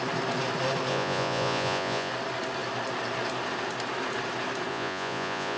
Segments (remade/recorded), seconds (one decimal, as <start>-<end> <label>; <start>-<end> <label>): 0.0-0.9 recorded; 0.9-2.1 remade; 2.1-4.7 recorded; 4.7-5.6 remade

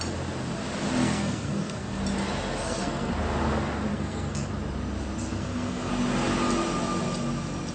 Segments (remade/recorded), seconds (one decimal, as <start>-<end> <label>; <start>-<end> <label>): 0.0-1.0 recorded; 1.0-2.0 remade; 2.0-2.6 recorded; 2.6-3.1 remade; 3.1-3.9 recorded; 3.9-4.5 remade; 4.5-5.2 recorded; 5.2-5.9 remade; 5.9-7.7 recorded